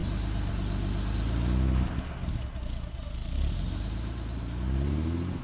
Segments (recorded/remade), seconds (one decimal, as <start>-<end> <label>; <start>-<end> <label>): 0.0-0.5 remade; 0.5-3.2 recorded; 3.2-4.9 remade; 4.9-5.4 recorded

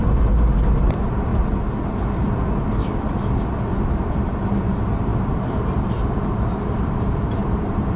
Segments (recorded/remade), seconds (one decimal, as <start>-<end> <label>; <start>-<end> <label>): 0.0-0.9 recorded; 0.9-1.3 remade; 1.3-4.2 recorded; 4.2-8.0 remade

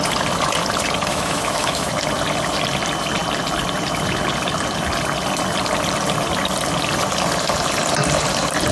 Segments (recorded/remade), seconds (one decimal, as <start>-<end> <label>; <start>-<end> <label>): 0.0-1.1 recorded; 1.1-1.9 remade; 1.9-8.7 recorded

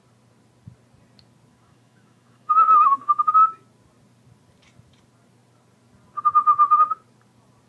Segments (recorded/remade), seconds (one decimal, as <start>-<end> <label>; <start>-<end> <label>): 0.0-1.5 recorded; 1.5-3.3 remade; 3.3-7.7 recorded

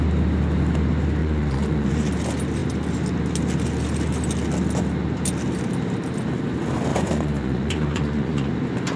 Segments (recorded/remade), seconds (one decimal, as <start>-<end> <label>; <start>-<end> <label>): 0.0-1.2 recorded; 1.2-2.1 remade; 2.1-6.9 recorded; 6.9-8.5 remade; 8.5-9.0 recorded

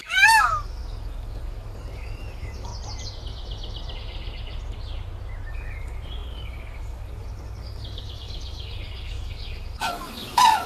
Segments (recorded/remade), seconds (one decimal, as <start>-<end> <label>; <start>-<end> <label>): 0.0-2.7 remade; 2.7-5.5 recorded; 5.5-10.7 remade